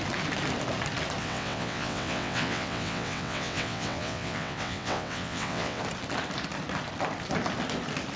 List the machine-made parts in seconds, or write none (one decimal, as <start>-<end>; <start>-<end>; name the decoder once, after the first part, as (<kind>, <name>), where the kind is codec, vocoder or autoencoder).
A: 1.2-5.8 (vocoder, WaveNeXt)